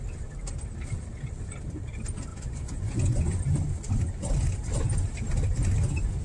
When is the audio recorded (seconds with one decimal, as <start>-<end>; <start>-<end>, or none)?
0.0-2.3; 3.4-6.2